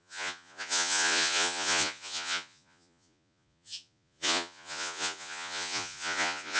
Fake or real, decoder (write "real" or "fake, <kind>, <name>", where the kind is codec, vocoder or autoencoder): fake, vocoder, Vocos